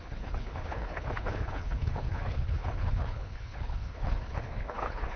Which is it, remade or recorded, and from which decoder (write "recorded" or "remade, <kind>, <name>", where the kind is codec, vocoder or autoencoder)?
remade, codec, HILCodec